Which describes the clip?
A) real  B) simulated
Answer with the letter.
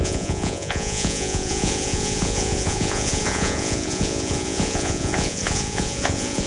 B